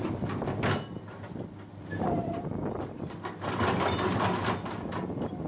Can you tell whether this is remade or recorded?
recorded